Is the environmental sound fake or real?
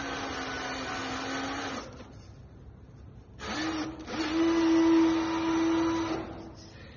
real